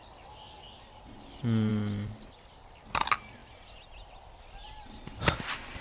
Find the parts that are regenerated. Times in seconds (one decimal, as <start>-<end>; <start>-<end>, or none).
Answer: 1.7-2.8; 3.4-4.4